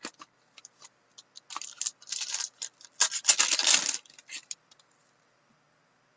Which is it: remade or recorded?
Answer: recorded